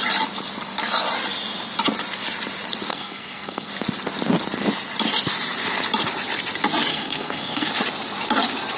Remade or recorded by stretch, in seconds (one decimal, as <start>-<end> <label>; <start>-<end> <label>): 0.0-2.9 recorded; 2.9-3.7 remade; 3.7-6.9 recorded; 6.9-7.7 remade; 7.7-8.8 recorded